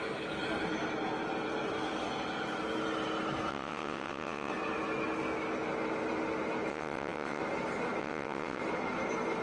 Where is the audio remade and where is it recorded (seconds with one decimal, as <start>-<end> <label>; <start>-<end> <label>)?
0.0-3.5 recorded; 3.5-4.5 remade; 4.5-6.7 recorded; 6.7-7.4 remade; 7.4-8.0 recorded; 8.0-8.6 remade; 8.6-9.4 recorded